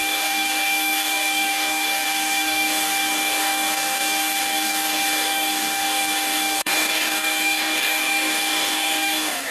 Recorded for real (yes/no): no